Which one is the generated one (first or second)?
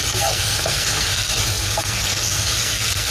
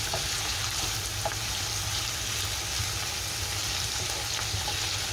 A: first